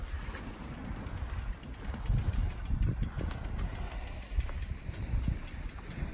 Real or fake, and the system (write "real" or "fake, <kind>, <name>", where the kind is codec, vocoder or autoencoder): real